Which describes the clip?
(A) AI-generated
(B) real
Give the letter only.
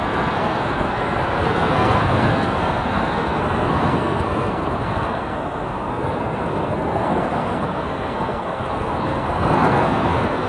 A